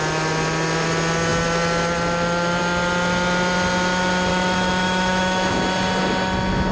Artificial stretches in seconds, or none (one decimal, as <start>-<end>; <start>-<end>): 4.3-5.5